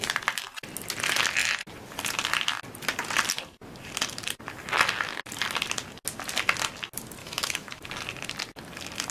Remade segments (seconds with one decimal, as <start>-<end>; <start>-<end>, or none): 7.2-7.8